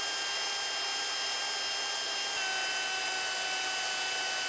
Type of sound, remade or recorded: recorded